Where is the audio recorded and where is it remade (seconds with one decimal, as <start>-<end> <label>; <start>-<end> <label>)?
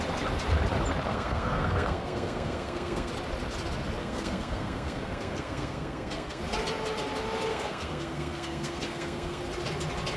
0.0-1.1 recorded; 1.1-3.1 remade; 3.1-4.0 recorded; 4.0-6.4 remade; 6.4-7.5 recorded; 7.5-9.4 remade; 9.4-10.2 recorded